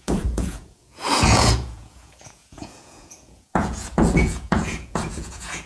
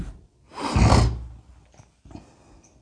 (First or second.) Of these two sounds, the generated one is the first